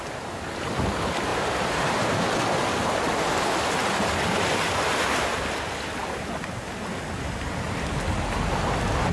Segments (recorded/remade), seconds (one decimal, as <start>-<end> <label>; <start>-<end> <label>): 0.0-1.3 recorded; 1.3-1.9 remade; 1.9-9.1 recorded